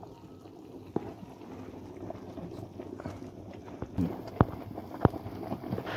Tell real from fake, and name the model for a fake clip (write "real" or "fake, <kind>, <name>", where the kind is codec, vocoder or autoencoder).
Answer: real